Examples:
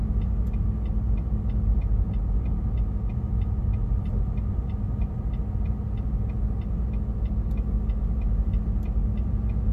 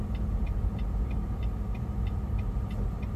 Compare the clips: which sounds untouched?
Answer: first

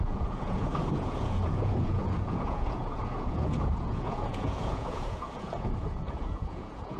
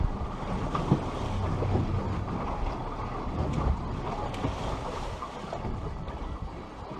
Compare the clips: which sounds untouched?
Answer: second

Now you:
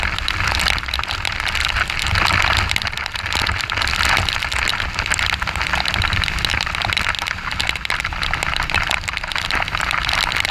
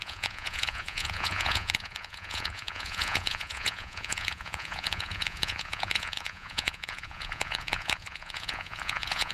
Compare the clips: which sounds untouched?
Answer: first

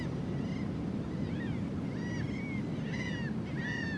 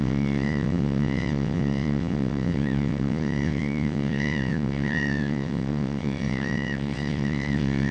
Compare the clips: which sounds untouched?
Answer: first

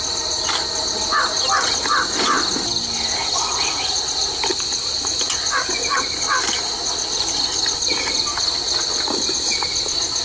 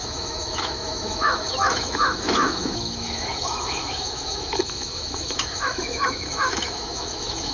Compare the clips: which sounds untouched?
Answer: first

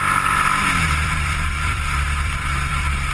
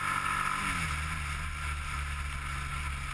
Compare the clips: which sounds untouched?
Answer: second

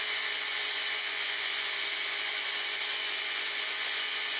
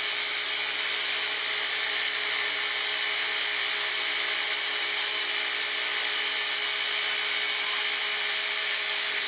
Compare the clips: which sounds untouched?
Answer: second